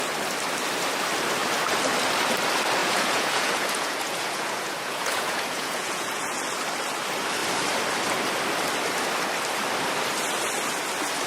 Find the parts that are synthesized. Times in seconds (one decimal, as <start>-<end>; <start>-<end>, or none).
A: 2.8-6.4